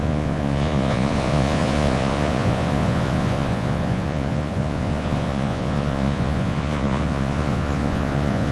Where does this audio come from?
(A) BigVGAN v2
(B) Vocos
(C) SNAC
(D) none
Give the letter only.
B